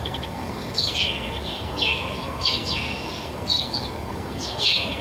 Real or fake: fake